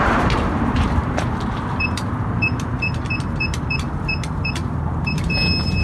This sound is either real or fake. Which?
fake